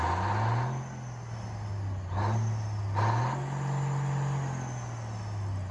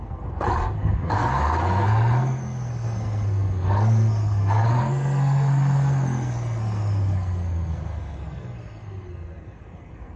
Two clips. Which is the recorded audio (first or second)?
first